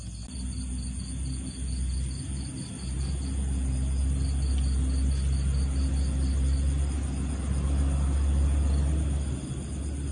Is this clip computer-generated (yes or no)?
no